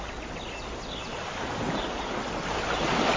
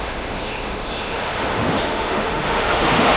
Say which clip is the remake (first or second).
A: second